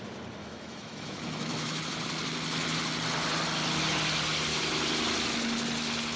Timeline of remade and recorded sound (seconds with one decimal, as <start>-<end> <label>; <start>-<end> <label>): 0.0-0.4 recorded; 0.4-1.8 remade; 1.8-6.2 recorded